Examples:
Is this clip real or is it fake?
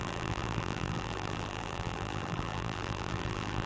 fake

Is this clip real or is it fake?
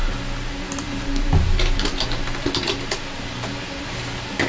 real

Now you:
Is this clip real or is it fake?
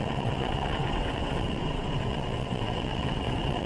fake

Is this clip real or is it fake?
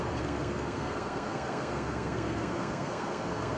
fake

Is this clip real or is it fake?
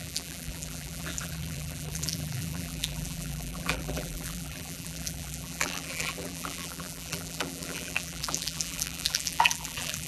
fake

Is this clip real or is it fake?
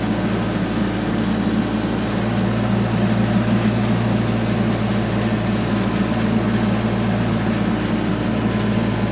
real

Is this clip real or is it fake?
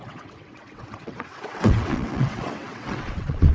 fake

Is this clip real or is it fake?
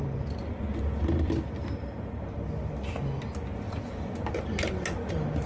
real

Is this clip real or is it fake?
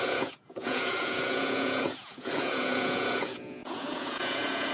fake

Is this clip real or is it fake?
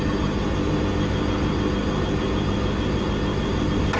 real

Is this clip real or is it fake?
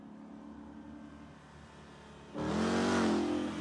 real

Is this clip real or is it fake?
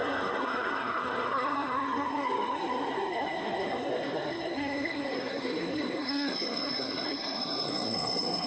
fake